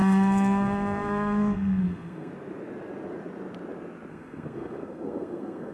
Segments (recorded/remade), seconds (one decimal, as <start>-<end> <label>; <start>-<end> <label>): 0.0-2.3 remade; 2.3-4.1 recorded; 4.1-5.7 remade